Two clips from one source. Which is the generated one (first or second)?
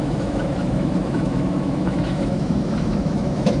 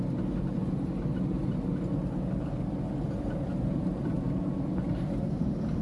first